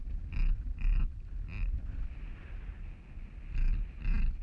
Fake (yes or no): no